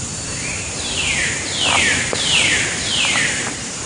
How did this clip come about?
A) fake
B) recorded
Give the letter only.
A